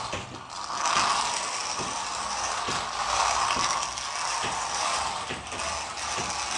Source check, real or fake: real